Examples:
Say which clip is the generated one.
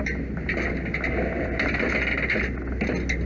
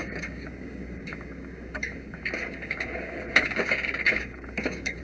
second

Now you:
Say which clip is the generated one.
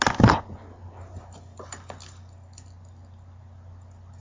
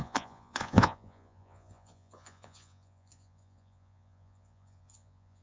second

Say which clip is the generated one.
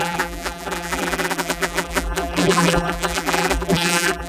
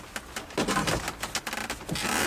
first